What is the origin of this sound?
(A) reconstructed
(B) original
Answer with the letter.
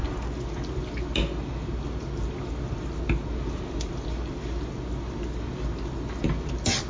B